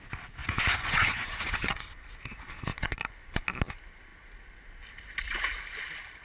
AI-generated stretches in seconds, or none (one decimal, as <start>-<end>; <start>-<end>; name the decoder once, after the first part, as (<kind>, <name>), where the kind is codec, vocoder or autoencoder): 0.4-1.8 (vocoder, Vocos); 2.7-3.2

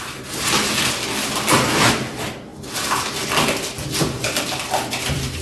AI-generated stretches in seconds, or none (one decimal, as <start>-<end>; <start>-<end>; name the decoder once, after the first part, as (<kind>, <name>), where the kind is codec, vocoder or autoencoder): none